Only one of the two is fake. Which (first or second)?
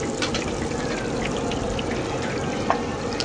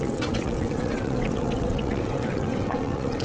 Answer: second